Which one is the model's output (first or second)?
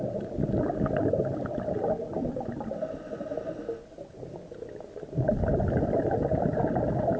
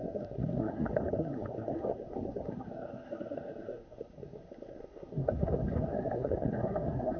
second